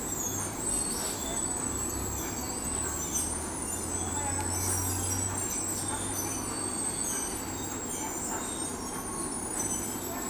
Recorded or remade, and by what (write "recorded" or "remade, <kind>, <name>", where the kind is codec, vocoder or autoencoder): recorded